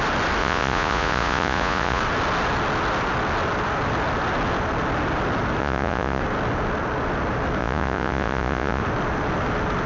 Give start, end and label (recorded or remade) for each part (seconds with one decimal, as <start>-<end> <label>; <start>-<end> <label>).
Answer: 0.0-0.4 recorded; 0.4-2.0 remade; 2.0-5.6 recorded; 5.6-6.2 remade; 6.2-7.6 recorded; 7.6-8.8 remade; 8.8-9.9 recorded